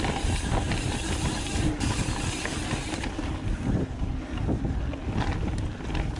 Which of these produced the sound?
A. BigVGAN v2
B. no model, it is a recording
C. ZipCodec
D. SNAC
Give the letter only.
B